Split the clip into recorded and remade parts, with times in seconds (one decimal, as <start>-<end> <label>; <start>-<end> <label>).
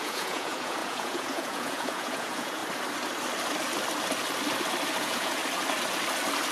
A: 0.0-2.6 remade; 2.6-5.0 recorded; 5.0-5.4 remade; 5.4-6.5 recorded